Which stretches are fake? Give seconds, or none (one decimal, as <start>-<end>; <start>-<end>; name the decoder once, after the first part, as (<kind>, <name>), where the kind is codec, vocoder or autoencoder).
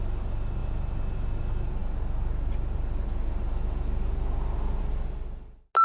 none